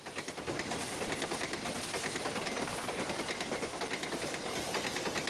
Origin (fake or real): real